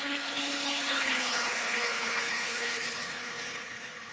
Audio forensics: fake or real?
fake